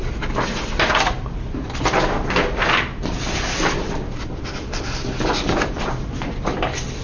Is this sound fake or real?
real